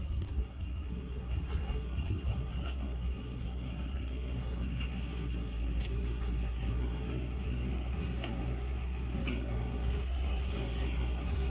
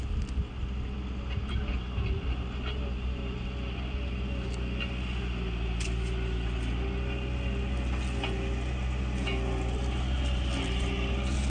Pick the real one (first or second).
second